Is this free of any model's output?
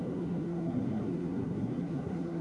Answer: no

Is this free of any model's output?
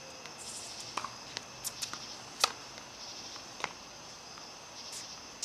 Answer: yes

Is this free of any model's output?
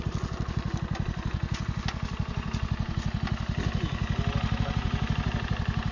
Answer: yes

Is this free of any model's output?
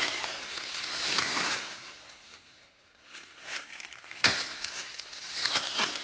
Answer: no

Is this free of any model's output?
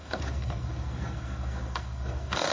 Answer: no